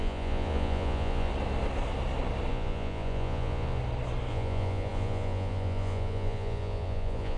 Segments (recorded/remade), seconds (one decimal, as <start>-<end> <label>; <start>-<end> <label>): 0.0-1.3 remade; 1.3-2.5 recorded; 2.5-3.8 remade; 3.8-4.3 recorded; 4.3-7.4 remade